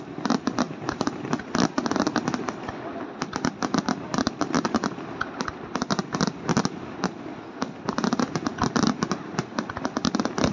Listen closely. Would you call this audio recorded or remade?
remade